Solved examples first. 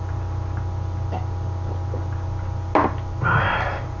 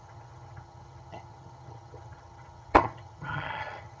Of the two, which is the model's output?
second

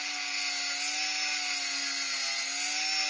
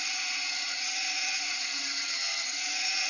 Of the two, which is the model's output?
second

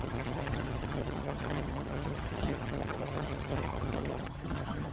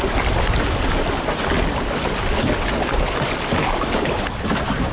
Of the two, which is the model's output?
first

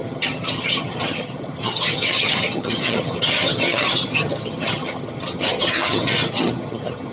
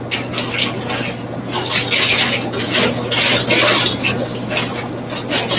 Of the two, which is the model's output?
first